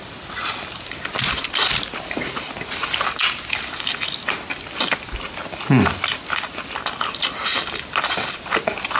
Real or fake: real